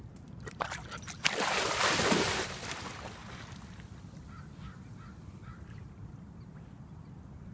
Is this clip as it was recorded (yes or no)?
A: yes